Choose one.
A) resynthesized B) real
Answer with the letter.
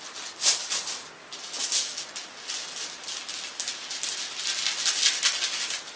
B